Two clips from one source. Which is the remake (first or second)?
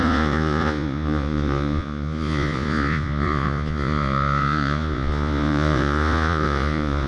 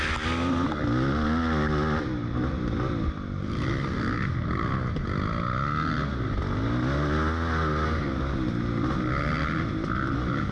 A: first